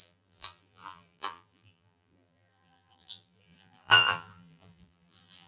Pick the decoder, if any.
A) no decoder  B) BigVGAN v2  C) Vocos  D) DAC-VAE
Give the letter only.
B